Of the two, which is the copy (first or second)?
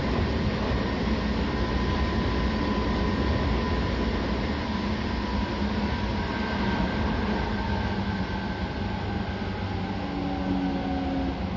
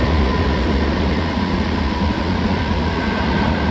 second